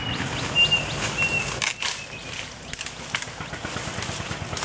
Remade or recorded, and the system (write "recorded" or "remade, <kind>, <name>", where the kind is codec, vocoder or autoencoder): recorded